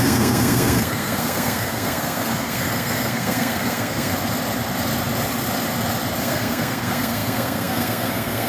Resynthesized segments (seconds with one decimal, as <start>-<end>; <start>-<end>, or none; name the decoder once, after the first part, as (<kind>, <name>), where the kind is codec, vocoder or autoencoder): 0.0-4.1 (codec, SNAC); 6.2-8.5